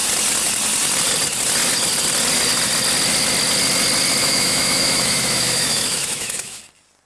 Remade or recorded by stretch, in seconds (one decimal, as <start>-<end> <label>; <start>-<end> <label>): 0.0-4.2 recorded; 4.2-6.6 remade; 6.6-7.1 recorded